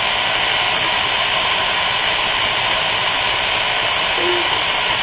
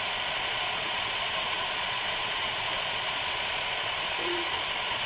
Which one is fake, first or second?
second